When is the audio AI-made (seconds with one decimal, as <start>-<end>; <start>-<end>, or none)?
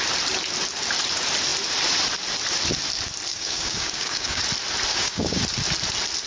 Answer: 3.3-4.4; 4.9-5.4